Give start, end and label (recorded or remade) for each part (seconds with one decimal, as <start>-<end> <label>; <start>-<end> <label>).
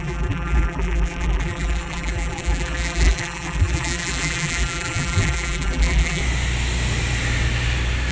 0.0-6.2 remade; 6.2-8.1 recorded